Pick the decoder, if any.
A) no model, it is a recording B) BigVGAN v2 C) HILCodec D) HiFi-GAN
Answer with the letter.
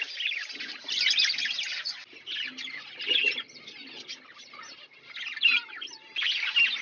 A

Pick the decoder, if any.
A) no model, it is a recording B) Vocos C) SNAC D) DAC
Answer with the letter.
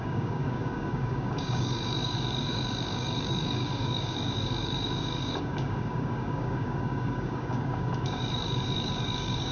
D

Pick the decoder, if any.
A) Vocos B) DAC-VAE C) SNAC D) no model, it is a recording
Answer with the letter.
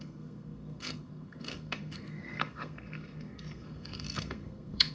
C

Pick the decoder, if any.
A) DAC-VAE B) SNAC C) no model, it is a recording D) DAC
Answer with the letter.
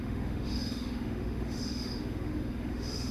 A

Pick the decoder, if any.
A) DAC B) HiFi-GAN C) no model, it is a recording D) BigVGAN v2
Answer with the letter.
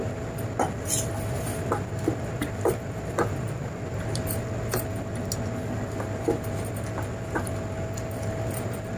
C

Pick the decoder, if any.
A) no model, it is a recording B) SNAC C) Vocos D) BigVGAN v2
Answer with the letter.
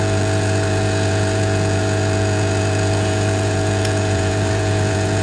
C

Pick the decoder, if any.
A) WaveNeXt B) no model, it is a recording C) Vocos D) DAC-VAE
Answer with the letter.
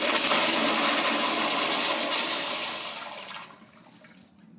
B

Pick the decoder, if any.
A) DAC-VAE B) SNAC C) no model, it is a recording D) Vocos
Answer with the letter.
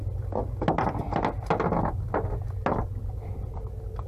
C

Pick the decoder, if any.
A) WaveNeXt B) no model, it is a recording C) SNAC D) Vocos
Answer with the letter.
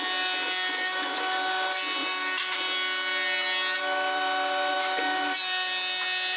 B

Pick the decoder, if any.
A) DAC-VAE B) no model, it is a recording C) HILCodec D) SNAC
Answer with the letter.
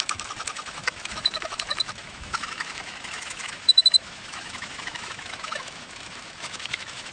A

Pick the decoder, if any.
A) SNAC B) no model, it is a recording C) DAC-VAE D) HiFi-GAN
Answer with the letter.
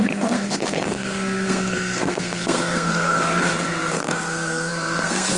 A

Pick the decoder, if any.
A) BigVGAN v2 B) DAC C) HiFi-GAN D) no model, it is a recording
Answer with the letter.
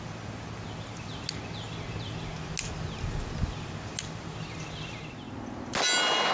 D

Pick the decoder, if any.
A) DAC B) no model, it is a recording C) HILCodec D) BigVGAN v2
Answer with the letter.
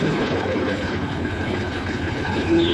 C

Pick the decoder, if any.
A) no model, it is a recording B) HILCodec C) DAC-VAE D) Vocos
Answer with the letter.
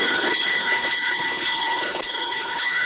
B